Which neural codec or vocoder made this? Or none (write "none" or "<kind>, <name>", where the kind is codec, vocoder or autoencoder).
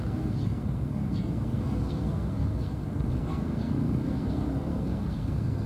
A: codec, SNAC